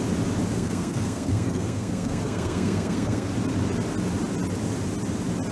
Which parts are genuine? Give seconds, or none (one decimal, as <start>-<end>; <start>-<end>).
0.0-0.5; 3.3-5.5